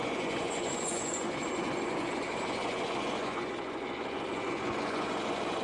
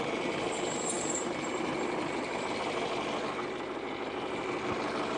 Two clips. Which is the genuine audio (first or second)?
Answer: second